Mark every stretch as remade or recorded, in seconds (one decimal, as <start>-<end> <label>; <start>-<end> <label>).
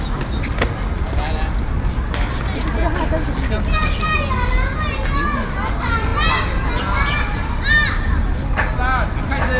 0.0-9.6 recorded